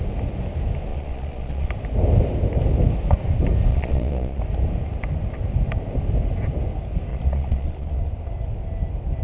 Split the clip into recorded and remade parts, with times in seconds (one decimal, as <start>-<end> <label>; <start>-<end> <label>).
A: 0.0-0.9 recorded; 0.9-1.7 remade; 1.7-3.7 recorded; 3.7-4.4 remade; 4.4-7.1 recorded; 7.1-8.0 remade; 8.0-9.2 recorded